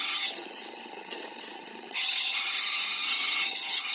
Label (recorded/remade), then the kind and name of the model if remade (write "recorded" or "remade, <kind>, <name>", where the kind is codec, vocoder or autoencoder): remade, vocoder, HiFi-GAN